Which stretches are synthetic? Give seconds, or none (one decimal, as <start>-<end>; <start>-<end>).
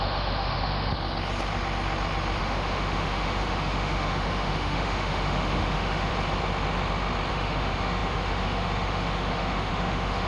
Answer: 0.0-0.9; 2.4-6.1; 7.3-10.3